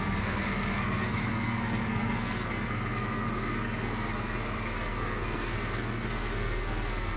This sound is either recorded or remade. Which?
remade